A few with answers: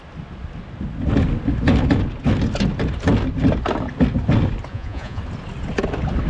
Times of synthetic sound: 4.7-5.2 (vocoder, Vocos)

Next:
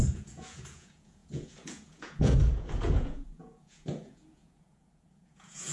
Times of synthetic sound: 0.0-5.7 (vocoder, Vocos)

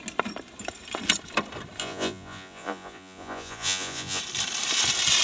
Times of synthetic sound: 1.8-4.2 (vocoder, Vocos)